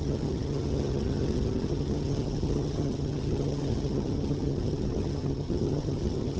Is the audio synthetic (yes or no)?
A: yes